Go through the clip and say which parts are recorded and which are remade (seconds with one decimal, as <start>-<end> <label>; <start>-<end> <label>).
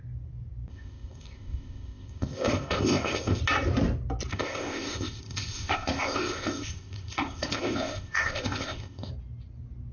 0.0-0.7 recorded; 0.7-3.4 remade; 3.4-4.3 recorded; 4.3-9.1 remade; 9.1-9.9 recorded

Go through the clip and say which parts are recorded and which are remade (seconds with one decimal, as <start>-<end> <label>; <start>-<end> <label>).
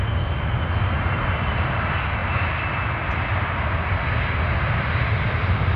0.0-5.8 recorded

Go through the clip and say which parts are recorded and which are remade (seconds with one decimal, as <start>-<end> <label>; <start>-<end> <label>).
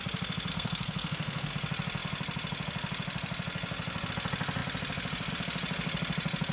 0.0-0.5 recorded; 0.5-1.5 remade; 1.5-6.5 recorded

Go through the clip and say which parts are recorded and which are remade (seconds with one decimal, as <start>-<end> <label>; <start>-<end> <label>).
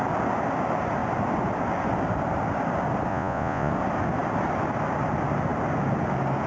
0.0-3.1 recorded; 3.1-3.7 remade; 3.7-6.5 recorded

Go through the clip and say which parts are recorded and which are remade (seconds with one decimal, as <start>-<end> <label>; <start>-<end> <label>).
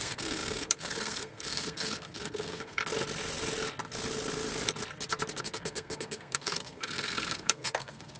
0.0-2.8 remade; 2.8-5.4 recorded; 5.4-8.2 remade